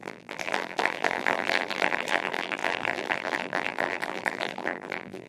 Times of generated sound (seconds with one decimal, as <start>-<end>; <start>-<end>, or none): 0.0-5.3